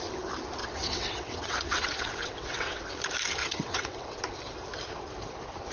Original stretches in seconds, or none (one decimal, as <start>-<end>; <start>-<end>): 0.0-0.6; 2.8-3.4; 4.2-5.7